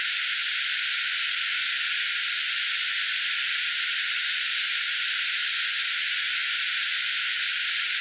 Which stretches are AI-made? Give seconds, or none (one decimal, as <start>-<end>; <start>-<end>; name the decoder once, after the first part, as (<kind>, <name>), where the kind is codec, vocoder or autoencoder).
none